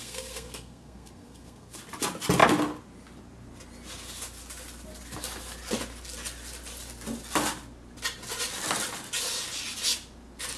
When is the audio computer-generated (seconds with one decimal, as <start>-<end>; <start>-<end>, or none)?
0.0-1.8